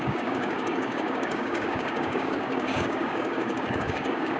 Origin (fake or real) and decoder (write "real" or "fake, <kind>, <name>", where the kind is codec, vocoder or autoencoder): fake, codec, DAC